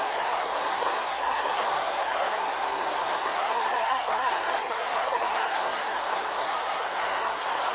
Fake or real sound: fake